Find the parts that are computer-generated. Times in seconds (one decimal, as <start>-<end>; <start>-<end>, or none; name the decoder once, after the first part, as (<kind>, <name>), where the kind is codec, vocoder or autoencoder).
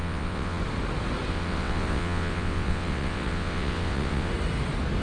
0.0-0.6 (vocoder, WaveNeXt); 1.3-4.3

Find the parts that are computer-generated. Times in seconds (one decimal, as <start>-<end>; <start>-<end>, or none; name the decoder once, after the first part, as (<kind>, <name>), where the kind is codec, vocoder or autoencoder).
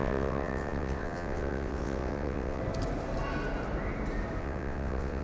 0.0-2.6 (vocoder, WaveNeXt); 4.4-5.2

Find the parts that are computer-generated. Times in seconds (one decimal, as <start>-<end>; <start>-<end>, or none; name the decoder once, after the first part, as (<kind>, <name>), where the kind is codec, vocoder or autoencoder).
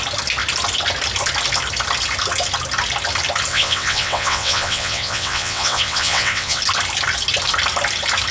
3.5-6.6 (vocoder, WaveNeXt)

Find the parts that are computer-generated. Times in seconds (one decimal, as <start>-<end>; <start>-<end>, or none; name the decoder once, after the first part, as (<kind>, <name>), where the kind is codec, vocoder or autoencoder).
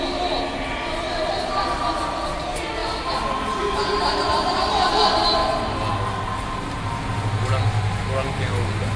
none